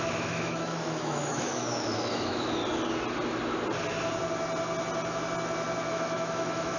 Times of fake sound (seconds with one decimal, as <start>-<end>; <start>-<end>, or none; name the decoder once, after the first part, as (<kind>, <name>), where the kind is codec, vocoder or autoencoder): 0.0-2.6 (autoencoder, DAC-VAE); 5.9-6.8